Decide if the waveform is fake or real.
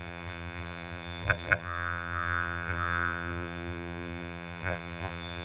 fake